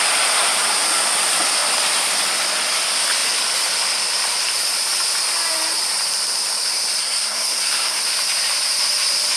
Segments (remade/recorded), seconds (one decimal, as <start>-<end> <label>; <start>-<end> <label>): 0.0-7.0 recorded; 7.0-8.0 remade; 8.0-9.4 recorded